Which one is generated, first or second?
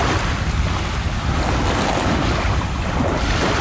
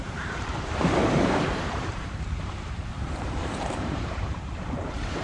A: second